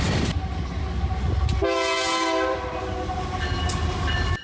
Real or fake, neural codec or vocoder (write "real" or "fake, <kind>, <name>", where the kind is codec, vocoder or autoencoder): real